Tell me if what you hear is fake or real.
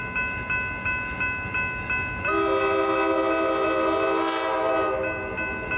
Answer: real